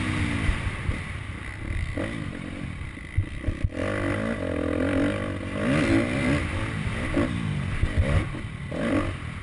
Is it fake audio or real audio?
real